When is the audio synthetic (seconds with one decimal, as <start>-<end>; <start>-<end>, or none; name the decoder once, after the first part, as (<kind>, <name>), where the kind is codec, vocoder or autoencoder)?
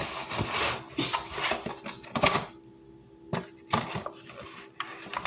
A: none